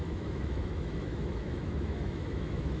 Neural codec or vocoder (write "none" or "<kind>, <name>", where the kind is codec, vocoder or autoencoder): autoencoder, DAC-VAE